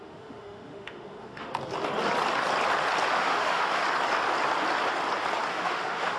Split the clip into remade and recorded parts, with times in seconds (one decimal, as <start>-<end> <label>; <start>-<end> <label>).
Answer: 0.0-1.5 remade; 1.5-3.1 recorded; 3.1-3.8 remade; 3.8-5.5 recorded; 5.5-6.2 remade